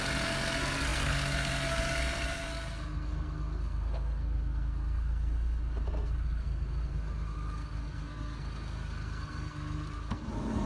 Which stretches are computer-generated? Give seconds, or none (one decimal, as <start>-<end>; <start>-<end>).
0.0-10.7